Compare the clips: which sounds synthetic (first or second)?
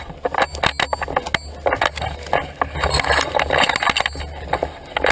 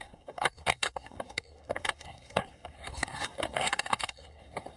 second